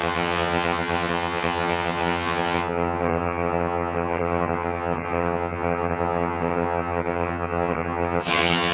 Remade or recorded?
remade